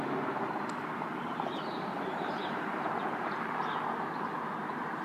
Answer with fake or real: fake